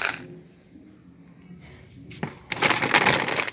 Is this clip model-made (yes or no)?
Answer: no